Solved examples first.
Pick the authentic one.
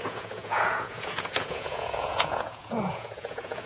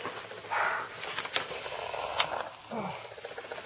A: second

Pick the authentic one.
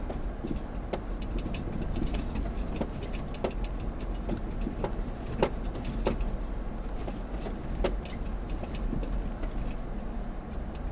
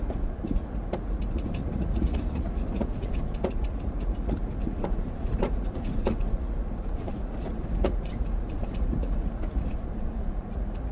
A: first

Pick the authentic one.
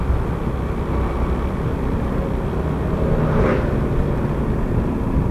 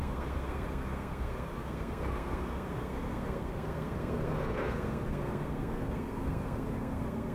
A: first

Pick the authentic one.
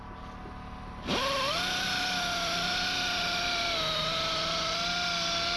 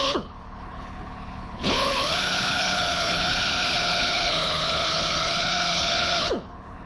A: first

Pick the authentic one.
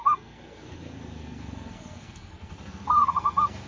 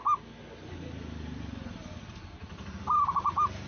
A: second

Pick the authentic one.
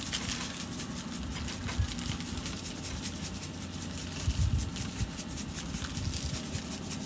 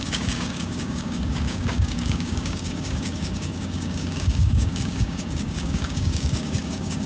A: first